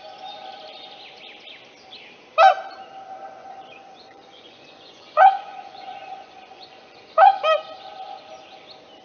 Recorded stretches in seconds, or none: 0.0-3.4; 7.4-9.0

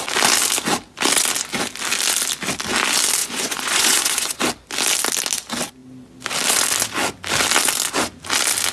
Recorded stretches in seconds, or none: 0.0-3.2; 4.4-8.7

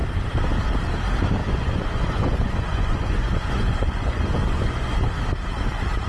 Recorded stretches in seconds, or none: 0.0-1.4; 5.1-6.1

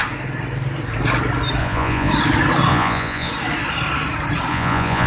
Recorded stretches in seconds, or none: 0.0-1.6; 2.1-2.7; 3.3-4.5

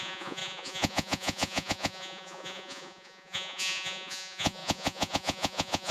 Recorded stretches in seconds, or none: none